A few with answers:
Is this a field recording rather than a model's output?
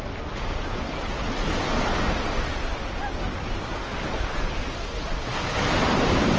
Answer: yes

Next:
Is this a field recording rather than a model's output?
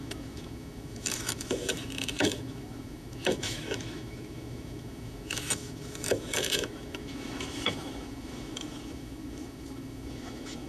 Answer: no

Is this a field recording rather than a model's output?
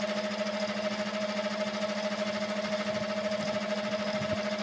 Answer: yes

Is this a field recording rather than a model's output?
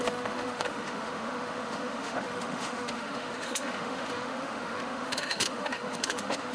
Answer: no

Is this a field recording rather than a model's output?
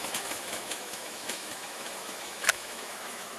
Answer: no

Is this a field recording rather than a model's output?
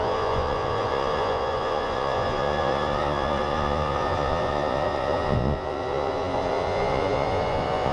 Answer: no